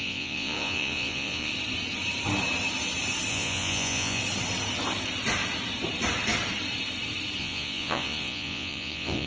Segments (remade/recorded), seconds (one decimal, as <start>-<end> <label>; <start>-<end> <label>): 0.0-1.5 remade; 1.5-3.3 recorded; 3.3-4.2 remade; 4.2-7.4 recorded; 7.4-9.3 remade